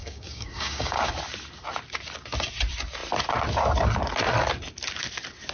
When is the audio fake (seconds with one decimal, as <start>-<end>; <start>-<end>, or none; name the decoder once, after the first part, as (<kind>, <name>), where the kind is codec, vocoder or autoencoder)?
0.0-1.1 (codec, DAC)